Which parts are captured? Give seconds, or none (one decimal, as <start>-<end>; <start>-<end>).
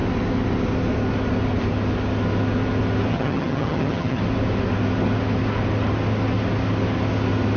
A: 0.0-3.1; 4.2-7.6